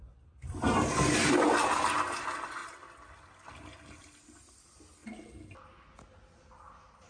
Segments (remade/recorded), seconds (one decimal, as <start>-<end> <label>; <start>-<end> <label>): 0.0-7.1 recorded

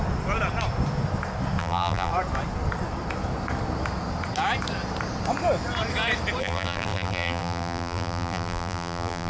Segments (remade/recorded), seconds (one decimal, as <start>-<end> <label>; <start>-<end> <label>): 0.0-1.6 recorded; 1.6-2.1 remade; 2.1-6.4 recorded; 6.4-9.3 remade

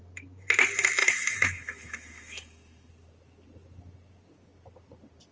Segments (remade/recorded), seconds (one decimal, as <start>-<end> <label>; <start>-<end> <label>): 0.0-1.0 recorded; 1.0-2.9 remade; 2.9-5.3 recorded

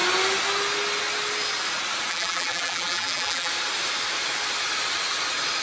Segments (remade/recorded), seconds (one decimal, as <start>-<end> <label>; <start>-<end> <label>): 0.0-2.1 recorded; 2.1-3.5 remade; 3.5-5.6 recorded

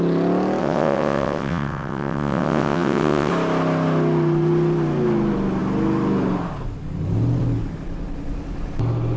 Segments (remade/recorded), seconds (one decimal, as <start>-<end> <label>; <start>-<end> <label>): 0.0-0.6 recorded; 0.6-3.3 remade; 3.3-9.2 recorded